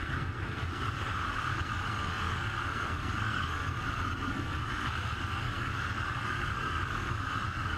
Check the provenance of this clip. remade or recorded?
remade